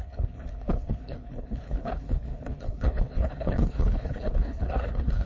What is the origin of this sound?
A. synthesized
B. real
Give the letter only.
A